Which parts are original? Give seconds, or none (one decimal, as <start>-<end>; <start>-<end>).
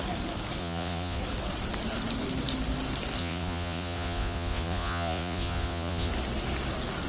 0.0-0.6; 1.2-3.2; 6.1-7.1